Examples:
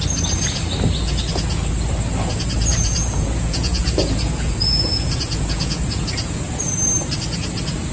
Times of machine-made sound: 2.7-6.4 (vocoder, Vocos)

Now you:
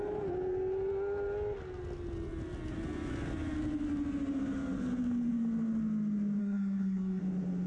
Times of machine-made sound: 6.4-7.2 (codec, SNAC)

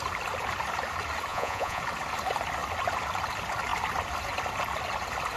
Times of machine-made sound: 1.3-1.8 (vocoder, Vocos)